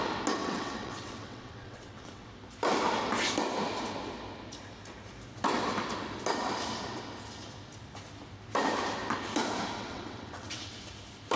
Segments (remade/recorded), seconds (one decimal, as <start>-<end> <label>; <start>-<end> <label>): 0.0-0.4 recorded; 0.4-2.3 remade; 2.3-9.8 recorded; 9.8-10.7 remade; 10.7-11.4 recorded